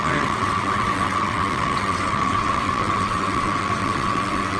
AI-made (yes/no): yes